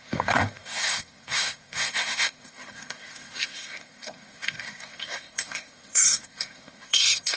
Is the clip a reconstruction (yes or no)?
yes